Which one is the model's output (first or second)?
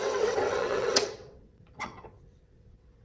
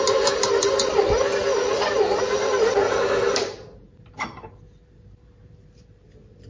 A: first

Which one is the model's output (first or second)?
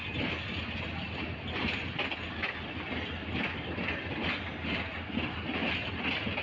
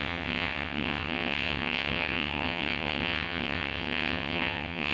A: second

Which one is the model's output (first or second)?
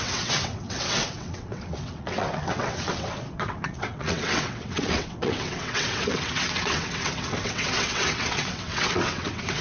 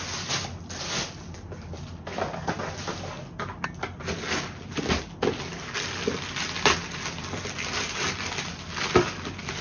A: first